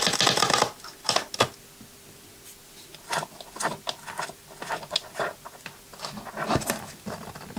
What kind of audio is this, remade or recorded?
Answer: recorded